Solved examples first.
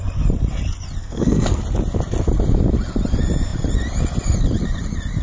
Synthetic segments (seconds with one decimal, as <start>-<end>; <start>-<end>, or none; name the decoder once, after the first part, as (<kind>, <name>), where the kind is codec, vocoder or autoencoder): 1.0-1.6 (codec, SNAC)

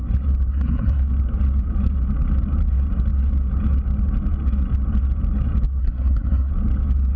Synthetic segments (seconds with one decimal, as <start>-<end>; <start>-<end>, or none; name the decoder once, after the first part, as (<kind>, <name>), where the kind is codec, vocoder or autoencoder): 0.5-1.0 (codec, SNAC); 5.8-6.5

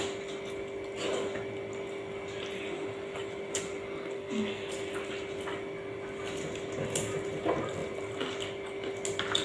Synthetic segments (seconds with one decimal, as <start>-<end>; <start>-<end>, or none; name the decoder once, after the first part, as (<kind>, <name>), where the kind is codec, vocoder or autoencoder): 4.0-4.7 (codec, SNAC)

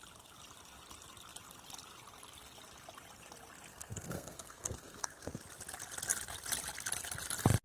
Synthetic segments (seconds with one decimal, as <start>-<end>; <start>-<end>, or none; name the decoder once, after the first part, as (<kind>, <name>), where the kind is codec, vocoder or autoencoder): 3.7-5.4 (codec, SNAC)